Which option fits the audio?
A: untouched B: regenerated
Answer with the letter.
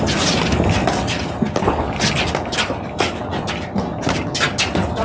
A